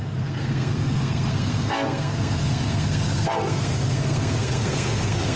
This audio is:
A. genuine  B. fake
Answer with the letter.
B